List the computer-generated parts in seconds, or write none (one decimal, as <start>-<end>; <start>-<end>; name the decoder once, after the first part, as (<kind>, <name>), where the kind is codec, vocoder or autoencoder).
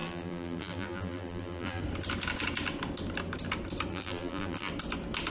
0.0-1.8 (vocoder, BigVGAN v2); 3.9-4.7